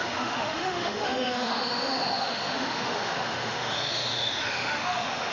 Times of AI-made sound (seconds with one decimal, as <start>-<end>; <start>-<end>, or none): 0.0-5.3